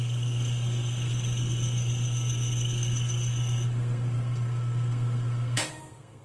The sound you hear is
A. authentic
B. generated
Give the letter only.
B